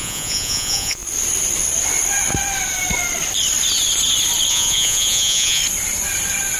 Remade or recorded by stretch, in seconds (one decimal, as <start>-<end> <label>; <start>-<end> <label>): 0.0-1.0 remade; 1.0-4.5 recorded; 4.5-5.6 remade; 5.6-6.6 recorded